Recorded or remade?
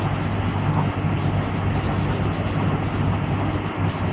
recorded